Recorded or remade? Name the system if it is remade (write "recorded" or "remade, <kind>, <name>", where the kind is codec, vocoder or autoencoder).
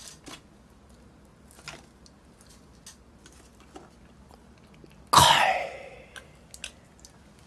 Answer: recorded